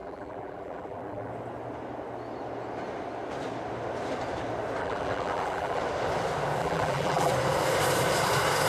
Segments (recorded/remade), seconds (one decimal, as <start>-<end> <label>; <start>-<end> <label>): 0.0-1.3 remade; 1.3-4.8 recorded; 4.8-5.8 remade; 5.8-6.6 recorded; 6.6-7.3 remade; 7.3-8.7 recorded